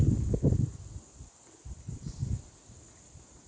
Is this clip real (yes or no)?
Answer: yes